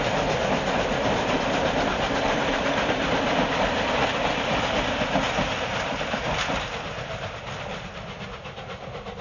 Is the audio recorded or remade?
recorded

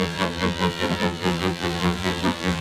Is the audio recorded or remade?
remade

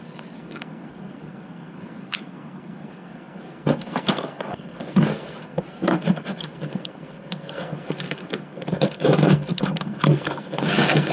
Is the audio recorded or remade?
remade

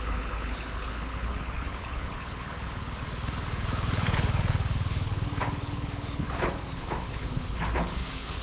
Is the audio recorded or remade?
remade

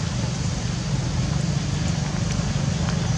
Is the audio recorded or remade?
recorded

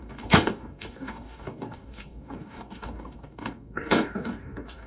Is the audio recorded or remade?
remade